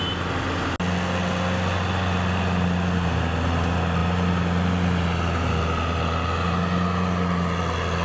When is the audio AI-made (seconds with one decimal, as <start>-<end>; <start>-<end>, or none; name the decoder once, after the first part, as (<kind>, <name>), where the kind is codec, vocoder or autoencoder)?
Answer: none